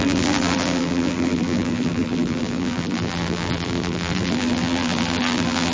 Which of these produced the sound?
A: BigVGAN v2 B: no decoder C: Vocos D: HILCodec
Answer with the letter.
A